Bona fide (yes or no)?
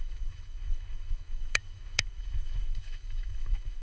no